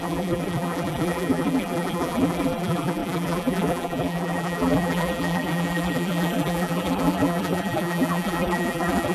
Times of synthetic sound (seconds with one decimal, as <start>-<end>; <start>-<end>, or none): 0.0-9.1